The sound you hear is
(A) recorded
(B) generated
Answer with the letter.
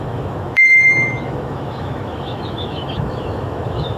B